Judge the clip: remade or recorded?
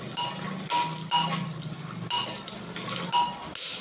recorded